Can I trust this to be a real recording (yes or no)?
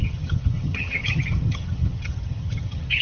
no